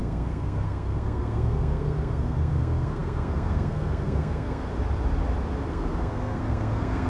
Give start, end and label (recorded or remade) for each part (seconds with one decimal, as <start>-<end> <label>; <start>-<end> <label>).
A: 0.0-4.7 remade; 4.7-5.7 recorded; 5.7-7.1 remade